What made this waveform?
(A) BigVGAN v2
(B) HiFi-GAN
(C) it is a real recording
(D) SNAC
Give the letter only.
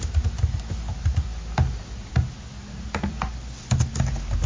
C